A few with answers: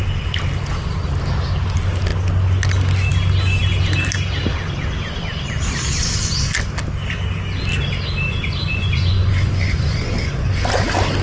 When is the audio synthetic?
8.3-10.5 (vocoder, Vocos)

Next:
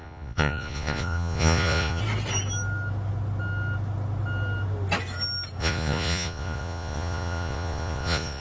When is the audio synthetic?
0.0-2.0 (vocoder, Vocos); 5.6-8.4

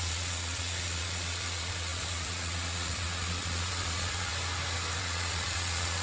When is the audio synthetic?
0.0-4.3 (vocoder, Vocos); 5.0-6.0

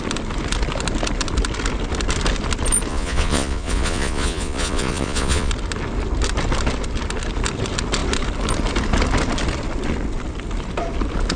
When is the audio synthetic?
2.9-5.5 (vocoder, Vocos)

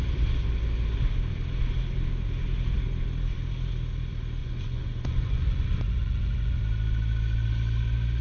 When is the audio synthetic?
4.4-6.6 (vocoder, Vocos)

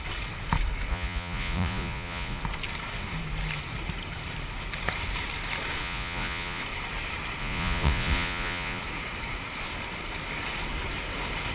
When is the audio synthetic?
0.9-2.4 (vocoder, Vocos); 5.8-6.6; 7.4-8.8

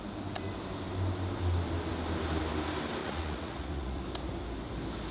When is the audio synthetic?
3.0-4.0 (vocoder, Vocos)

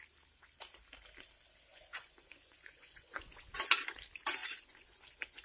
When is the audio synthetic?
1.7-3.5 (vocoder, Vocos); 4.4-5.4